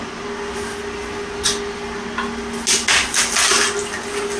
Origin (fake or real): real